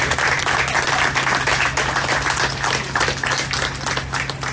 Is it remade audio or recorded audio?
recorded